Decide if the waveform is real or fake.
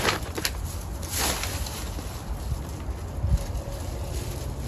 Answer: real